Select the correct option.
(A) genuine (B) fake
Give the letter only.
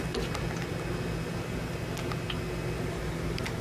A